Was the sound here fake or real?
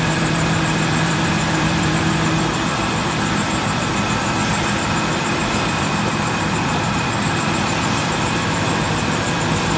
fake